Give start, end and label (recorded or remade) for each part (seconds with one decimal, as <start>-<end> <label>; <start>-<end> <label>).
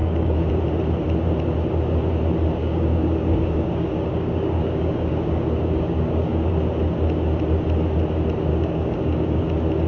0.0-0.5 remade; 0.5-2.6 recorded; 2.6-6.5 remade; 6.5-8.5 recorded; 8.5-9.4 remade; 9.4-9.9 recorded